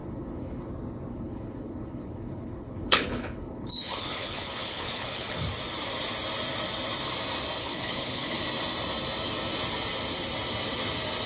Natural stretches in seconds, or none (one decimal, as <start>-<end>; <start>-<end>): 0.7-1.1; 5.5-7.6; 8.4-11.3